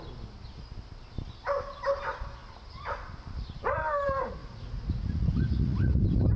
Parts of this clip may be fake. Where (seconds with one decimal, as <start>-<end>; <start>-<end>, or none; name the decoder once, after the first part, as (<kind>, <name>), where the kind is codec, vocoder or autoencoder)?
4.4-6.0 (vocoder, Vocos)